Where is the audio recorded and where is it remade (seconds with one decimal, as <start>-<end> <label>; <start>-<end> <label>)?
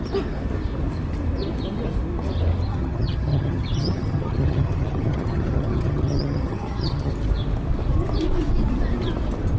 0.0-2.7 recorded; 2.7-7.1 remade; 7.1-9.6 recorded